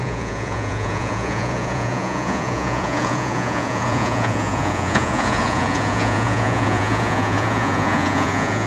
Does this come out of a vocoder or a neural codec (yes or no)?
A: yes